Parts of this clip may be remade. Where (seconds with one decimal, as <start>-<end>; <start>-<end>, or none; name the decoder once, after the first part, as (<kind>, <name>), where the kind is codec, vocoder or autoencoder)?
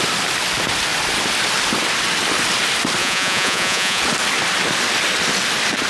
3.0-4.0 (vocoder, Vocos)